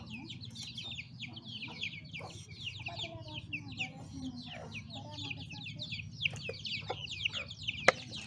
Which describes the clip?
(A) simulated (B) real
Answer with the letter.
B